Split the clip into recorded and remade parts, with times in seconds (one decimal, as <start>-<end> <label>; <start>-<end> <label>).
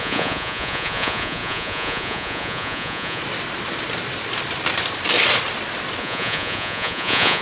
0.0-3.2 remade; 3.2-6.0 recorded; 6.0-7.4 remade